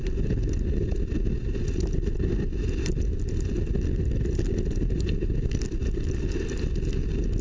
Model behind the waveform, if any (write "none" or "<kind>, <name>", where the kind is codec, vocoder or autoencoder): none